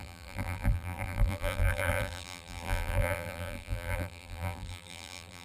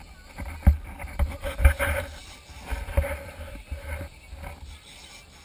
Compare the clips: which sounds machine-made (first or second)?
first